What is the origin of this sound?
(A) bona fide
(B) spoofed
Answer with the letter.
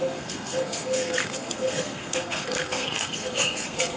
B